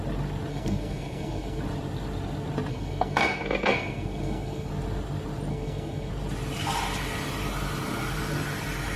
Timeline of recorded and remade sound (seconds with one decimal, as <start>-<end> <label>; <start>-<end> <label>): 0.0-0.5 recorded; 0.5-1.6 remade; 1.6-2.7 recorded; 2.7-4.7 remade; 4.7-5.5 recorded; 5.5-6.1 remade; 6.1-9.0 recorded